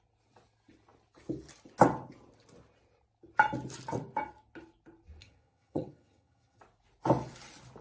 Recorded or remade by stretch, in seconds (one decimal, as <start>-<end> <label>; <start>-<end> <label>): 0.0-5.2 recorded; 5.2-6.6 remade; 6.6-7.8 recorded